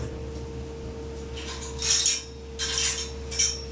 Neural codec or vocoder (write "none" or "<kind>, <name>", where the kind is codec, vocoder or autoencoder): none